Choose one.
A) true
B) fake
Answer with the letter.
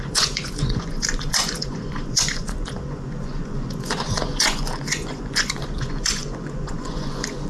B